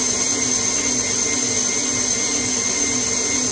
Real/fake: real